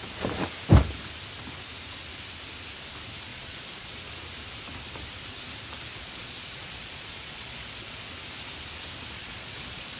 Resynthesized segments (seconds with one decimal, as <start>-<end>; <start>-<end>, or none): 3.3-4.0; 5.9-8.1; 9.2-10.0

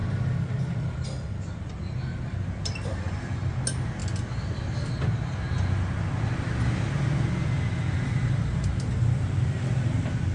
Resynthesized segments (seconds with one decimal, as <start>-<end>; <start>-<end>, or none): none

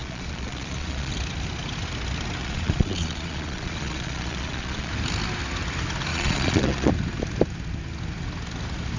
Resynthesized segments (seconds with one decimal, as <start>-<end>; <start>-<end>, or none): 0.0-1.1; 2.4-4.9; 6.1-6.9

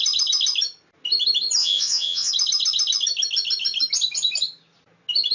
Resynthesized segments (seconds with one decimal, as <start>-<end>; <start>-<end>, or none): 1.6-2.3